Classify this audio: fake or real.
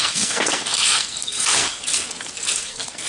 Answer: fake